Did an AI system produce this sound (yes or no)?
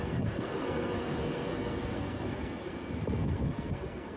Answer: yes